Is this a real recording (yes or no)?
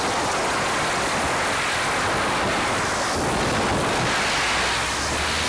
yes